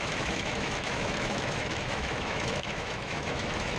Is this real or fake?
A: fake